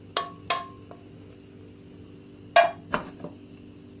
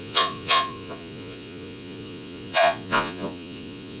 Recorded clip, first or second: first